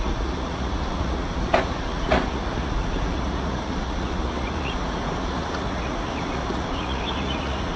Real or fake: fake